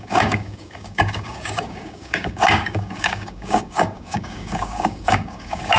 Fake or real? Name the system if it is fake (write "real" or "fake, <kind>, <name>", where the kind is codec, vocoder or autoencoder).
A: fake, codec, DAC